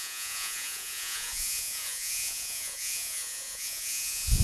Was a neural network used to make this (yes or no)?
yes